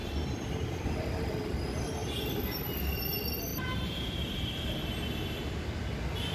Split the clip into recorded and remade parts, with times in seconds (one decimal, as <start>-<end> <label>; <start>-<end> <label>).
0.0-3.5 recorded; 3.5-5.3 remade; 5.3-6.3 recorded